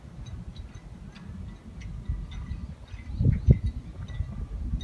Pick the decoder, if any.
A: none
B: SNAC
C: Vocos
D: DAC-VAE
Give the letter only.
A